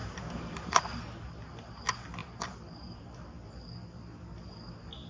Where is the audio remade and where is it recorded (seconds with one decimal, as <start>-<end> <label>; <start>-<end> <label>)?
0.0-0.8 remade; 0.8-2.2 recorded; 2.2-3.0 remade; 3.0-5.1 recorded